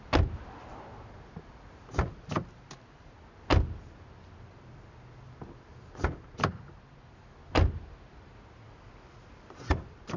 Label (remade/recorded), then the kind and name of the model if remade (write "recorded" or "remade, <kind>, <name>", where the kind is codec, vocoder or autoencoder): recorded